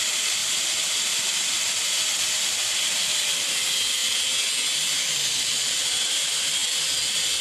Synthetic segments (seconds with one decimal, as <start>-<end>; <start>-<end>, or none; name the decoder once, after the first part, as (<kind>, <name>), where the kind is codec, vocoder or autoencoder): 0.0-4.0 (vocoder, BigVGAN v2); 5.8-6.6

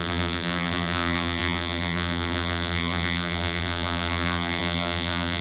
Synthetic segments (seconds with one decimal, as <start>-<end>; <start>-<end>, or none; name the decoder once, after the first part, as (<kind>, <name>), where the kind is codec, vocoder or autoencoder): 0.0-5.4 (vocoder, BigVGAN v2)

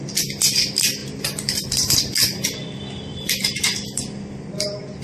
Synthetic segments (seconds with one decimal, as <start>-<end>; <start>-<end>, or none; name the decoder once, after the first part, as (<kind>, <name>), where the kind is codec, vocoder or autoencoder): 1.0-2.0 (vocoder, BigVGAN v2); 3.1-4.0